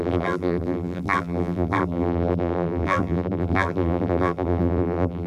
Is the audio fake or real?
fake